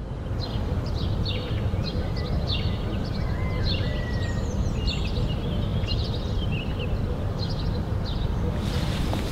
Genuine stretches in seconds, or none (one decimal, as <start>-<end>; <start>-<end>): 0.0-9.3